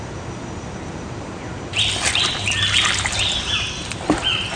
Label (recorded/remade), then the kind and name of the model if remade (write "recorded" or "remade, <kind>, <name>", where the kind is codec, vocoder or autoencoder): remade, vocoder, BigVGAN v2